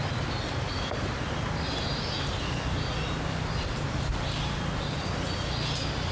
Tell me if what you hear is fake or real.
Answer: real